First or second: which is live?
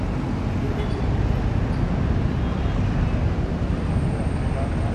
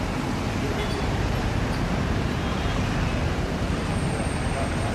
first